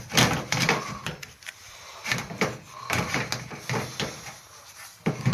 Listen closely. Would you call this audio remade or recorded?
recorded